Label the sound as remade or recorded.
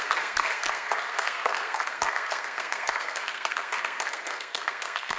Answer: remade